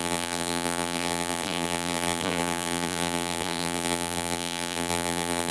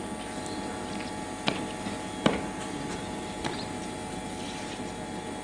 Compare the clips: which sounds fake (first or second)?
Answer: first